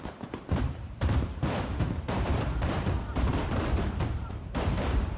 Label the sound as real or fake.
fake